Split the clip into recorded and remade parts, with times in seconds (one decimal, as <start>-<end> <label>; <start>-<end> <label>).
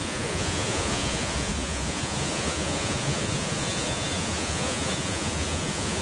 0.0-6.0 remade